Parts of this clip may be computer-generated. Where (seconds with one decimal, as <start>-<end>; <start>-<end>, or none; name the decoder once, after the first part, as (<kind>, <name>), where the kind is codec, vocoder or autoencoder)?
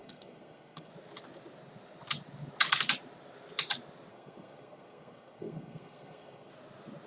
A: 0.0-0.9 (codec, SNAC); 4.1-6.5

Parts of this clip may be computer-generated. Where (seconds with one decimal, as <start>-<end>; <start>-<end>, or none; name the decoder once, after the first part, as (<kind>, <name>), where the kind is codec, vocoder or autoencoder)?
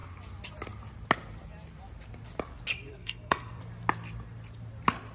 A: 2.9-3.6 (codec, SNAC)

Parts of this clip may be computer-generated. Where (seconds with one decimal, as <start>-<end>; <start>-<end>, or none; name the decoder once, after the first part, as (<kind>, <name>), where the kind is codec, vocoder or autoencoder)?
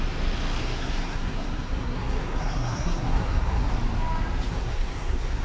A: 0.6-3.7 (codec, SNAC); 4.5-5.4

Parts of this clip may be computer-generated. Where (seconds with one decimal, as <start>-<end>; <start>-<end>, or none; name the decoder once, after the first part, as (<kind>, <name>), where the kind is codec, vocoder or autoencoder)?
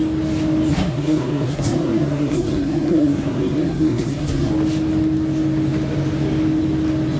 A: 0.7-4.5 (codec, SNAC)